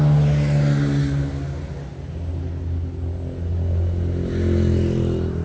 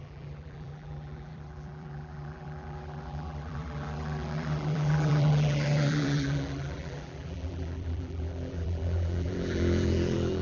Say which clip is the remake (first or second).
second